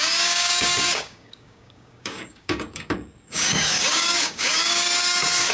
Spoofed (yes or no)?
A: yes